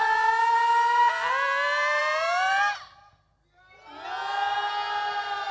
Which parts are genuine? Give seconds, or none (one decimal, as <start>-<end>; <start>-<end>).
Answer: 0.0-5.5